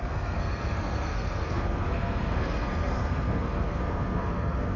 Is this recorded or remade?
remade